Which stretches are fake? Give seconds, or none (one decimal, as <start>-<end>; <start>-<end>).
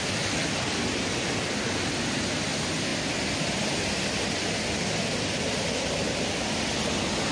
none